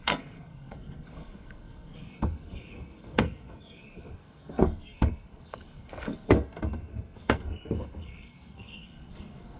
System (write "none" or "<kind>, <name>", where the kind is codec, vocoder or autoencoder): codec, SNAC